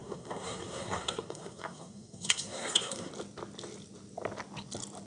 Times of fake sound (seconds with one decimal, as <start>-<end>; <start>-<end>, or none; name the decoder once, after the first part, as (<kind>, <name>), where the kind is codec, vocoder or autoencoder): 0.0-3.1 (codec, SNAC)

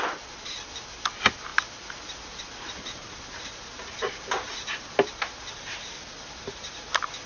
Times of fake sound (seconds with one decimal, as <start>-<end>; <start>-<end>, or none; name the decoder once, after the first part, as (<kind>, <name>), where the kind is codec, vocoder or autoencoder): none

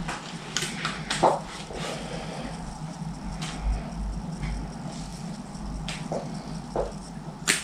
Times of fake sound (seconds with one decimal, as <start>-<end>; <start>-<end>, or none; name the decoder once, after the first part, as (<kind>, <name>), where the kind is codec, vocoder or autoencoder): 0.0-3.3 (vocoder, BigVGAN v2)

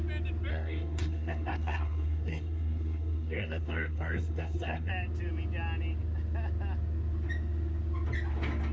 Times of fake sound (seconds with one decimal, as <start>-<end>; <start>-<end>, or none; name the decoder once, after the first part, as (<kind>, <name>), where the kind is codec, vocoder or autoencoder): 0.5-4.9 (codec, SNAC)

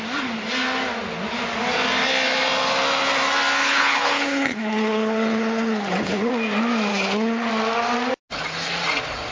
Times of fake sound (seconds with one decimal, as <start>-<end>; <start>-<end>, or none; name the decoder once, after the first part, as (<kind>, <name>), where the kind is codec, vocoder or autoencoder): 3.6-6.3 (codec, HILCodec); 6.9-7.5

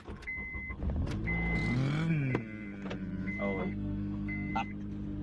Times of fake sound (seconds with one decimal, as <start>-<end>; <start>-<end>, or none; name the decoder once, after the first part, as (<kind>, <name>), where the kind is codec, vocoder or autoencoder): 3.6-4.5 (codec, SNAC)